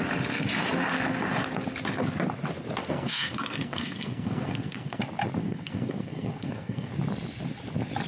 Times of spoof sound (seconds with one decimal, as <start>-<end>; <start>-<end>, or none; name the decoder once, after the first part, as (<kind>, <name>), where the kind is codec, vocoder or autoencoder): 2.8-5.0 (codec, SNAC); 5.4-6.9